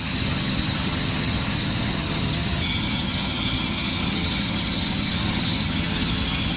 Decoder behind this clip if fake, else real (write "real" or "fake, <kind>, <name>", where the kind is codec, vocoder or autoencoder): fake, vocoder, HiFi-GAN